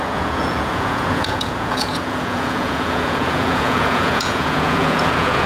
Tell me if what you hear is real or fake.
fake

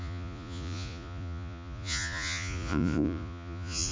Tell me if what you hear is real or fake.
fake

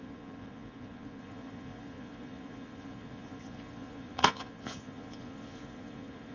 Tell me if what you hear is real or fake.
fake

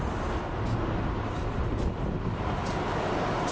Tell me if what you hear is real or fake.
real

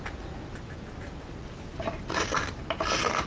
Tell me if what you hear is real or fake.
real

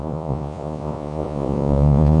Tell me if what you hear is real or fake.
fake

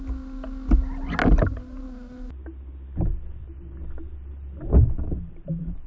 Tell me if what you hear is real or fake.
real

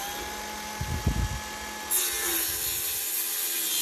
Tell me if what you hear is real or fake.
real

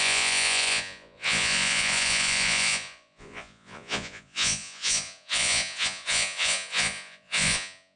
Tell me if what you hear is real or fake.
fake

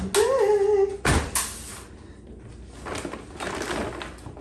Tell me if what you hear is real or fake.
real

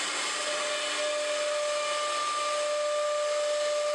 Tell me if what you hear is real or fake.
real